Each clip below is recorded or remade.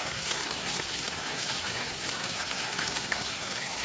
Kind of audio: remade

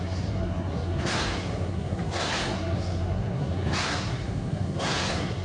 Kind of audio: remade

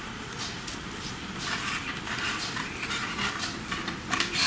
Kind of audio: recorded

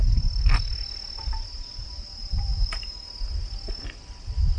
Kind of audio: recorded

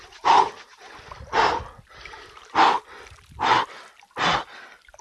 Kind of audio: recorded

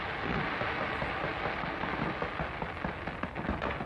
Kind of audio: recorded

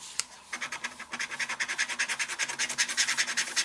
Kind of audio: recorded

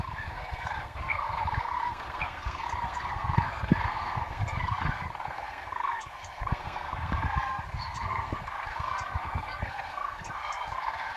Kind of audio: remade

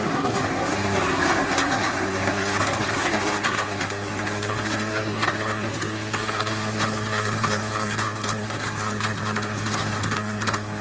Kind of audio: remade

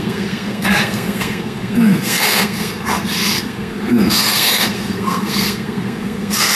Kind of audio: remade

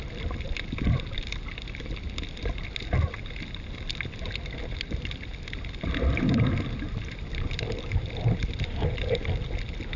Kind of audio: recorded